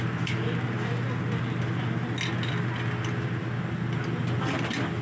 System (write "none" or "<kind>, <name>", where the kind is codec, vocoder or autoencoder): none